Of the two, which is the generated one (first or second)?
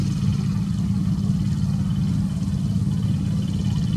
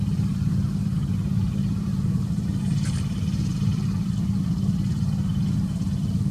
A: second